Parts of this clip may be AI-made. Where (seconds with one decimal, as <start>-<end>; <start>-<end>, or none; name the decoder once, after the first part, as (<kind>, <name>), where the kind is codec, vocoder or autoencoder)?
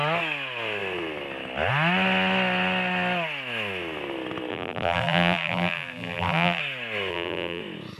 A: 4.5-6.6 (vocoder, BigVGAN v2); 7.1-7.6